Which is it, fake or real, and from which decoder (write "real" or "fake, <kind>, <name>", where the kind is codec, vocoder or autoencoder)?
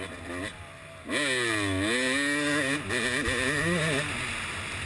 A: real